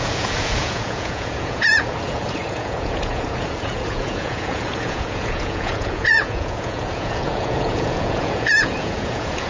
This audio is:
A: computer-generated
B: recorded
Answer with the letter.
A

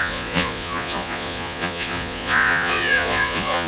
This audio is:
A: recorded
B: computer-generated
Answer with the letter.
B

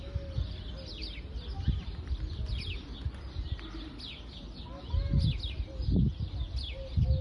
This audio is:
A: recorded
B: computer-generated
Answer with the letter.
A